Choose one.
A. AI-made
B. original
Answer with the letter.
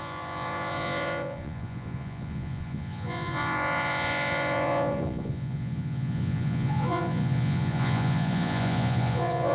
A